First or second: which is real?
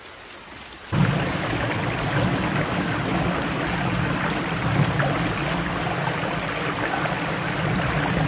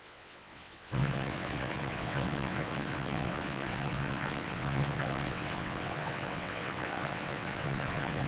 first